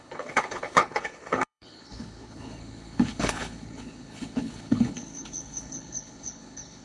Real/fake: fake